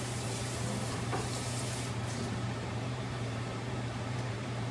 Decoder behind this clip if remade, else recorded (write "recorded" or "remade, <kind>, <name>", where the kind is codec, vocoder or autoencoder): remade, vocoder, BigVGAN v2